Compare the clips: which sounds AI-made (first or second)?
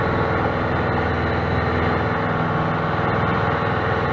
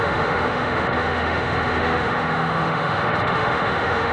second